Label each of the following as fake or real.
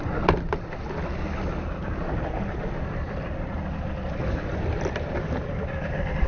real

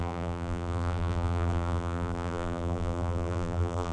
fake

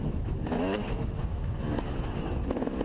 fake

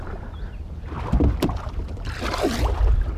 real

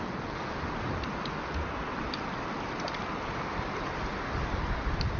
real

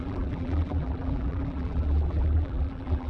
fake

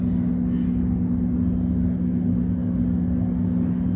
real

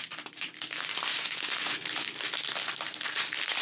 real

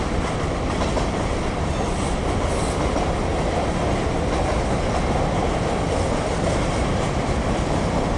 real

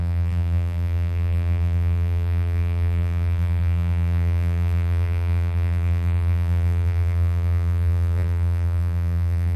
fake